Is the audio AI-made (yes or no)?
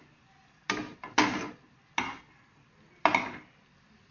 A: no